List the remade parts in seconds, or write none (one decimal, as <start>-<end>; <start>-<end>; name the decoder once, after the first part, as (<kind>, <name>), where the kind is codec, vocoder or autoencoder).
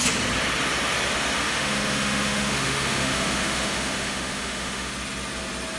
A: 1.4-4.9 (autoencoder, DAC-VAE)